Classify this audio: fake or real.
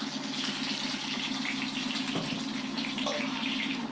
fake